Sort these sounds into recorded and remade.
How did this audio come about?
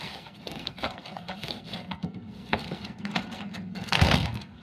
remade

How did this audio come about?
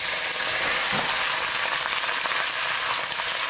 recorded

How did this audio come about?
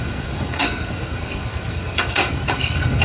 remade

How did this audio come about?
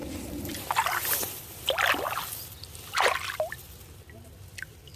recorded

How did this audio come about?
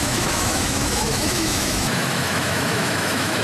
remade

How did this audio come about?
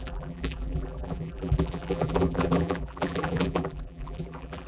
remade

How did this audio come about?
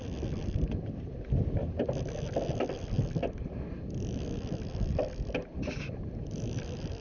recorded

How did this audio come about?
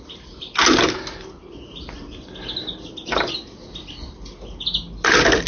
recorded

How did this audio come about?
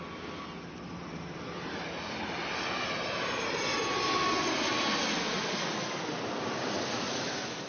recorded